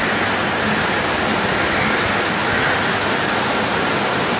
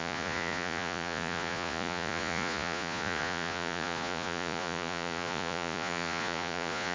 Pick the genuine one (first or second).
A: first